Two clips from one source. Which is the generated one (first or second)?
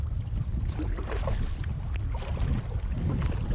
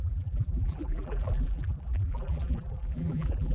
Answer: second